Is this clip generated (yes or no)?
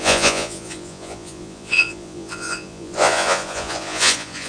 yes